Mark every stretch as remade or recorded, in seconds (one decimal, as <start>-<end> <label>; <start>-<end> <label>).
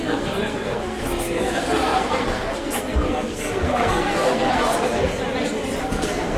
0.0-5.1 remade; 5.1-5.8 recorded; 5.8-6.4 remade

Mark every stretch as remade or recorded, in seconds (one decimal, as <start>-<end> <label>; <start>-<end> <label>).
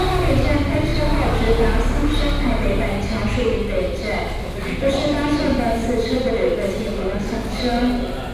0.0-0.9 recorded; 0.9-2.2 remade; 2.2-8.3 recorded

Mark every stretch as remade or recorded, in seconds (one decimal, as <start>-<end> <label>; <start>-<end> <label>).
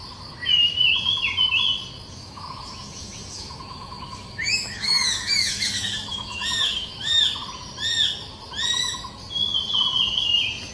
0.0-2.2 recorded; 2.2-7.2 remade; 7.2-10.7 recorded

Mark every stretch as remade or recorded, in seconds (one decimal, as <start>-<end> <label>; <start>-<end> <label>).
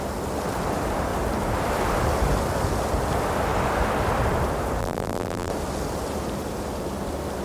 0.0-4.8 recorded; 4.8-5.5 remade; 5.5-7.4 recorded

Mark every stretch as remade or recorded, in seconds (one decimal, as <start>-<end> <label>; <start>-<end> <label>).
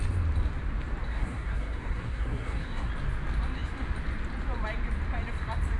0.0-1.1 recorded; 1.1-2.9 remade; 2.9-5.8 recorded